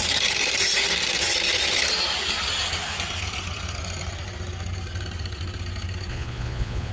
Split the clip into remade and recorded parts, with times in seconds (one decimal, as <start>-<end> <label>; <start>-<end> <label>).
0.0-6.1 recorded; 6.1-6.9 remade